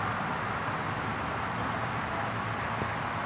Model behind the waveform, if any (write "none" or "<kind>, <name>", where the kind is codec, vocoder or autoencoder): none